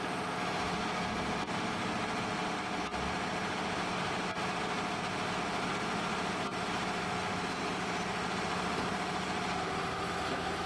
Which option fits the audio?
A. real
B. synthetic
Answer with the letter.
A